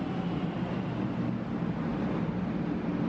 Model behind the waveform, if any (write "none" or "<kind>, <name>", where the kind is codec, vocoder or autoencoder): none